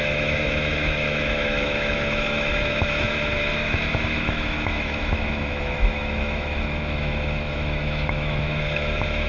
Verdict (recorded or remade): remade